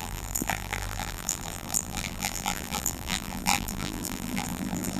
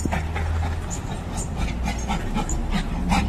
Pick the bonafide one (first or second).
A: second